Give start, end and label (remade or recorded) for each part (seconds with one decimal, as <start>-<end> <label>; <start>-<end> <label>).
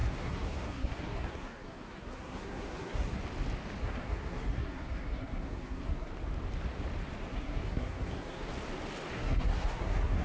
0.0-3.2 remade; 3.2-3.8 recorded; 3.8-6.1 remade; 6.1-7.3 recorded; 7.3-8.5 remade; 8.5-9.1 recorded; 9.1-10.2 remade